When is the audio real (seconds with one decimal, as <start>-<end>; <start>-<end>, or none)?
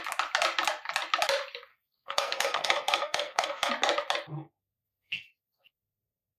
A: 0.0-1.7; 3.7-4.3